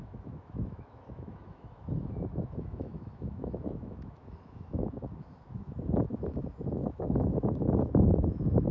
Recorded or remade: remade